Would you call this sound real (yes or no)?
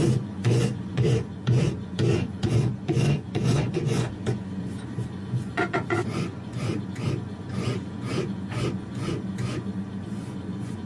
no